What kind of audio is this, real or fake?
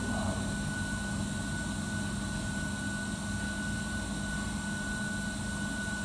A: real